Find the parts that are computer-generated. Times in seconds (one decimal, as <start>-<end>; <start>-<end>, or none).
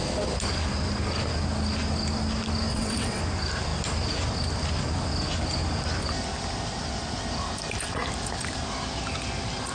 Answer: 2.7-3.2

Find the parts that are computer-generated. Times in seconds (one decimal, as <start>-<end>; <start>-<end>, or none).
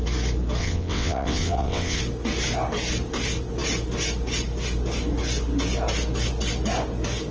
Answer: 0.6-2.0